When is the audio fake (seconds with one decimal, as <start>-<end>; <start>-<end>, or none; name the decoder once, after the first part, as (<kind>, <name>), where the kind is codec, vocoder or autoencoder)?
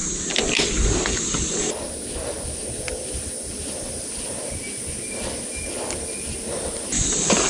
none